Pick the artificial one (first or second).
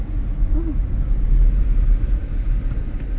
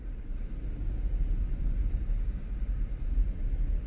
second